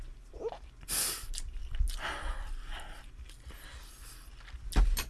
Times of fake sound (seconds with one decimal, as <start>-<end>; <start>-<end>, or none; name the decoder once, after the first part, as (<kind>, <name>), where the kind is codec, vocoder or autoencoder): none